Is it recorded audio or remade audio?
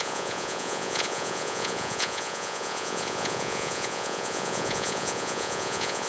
remade